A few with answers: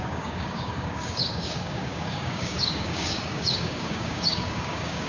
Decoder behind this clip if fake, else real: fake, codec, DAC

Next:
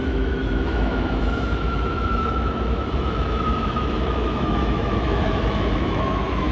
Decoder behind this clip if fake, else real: fake, autoencoder, DAC-VAE